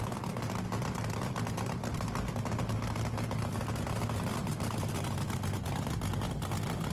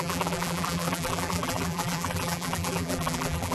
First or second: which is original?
first